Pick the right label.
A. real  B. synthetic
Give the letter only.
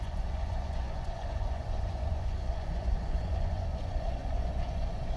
B